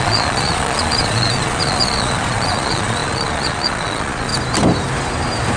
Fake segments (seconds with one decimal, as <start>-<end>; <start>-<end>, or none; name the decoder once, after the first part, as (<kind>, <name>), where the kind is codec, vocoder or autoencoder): 0.0-4.3 (vocoder, Vocos)